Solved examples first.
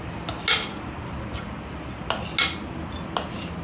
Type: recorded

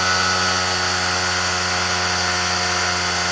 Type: recorded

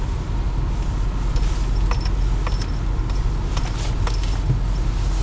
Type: recorded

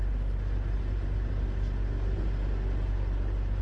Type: recorded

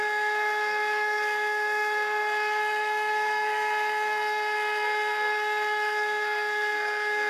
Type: remade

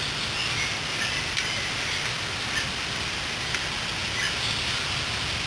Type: recorded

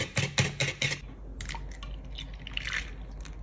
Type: recorded